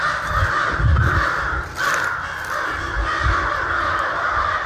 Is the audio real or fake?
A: real